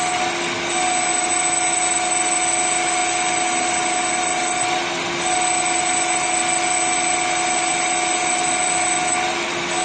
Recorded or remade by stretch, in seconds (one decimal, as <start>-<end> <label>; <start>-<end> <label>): 0.0-9.8 recorded